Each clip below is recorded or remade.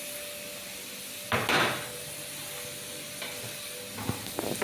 recorded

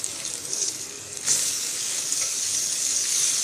remade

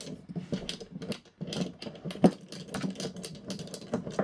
recorded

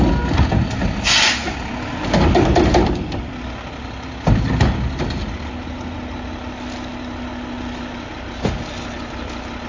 recorded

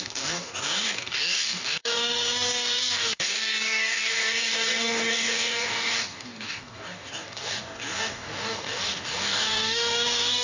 remade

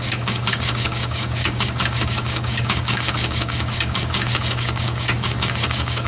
remade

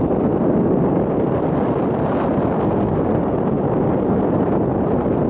recorded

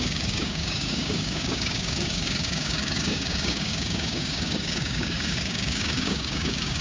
remade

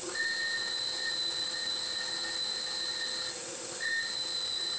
recorded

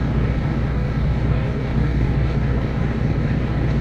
remade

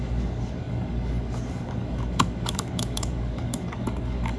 remade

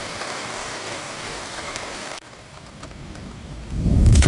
remade